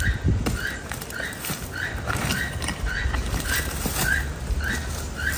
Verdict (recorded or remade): recorded